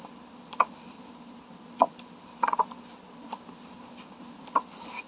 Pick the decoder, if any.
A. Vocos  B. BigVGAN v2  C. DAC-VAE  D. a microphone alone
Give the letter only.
D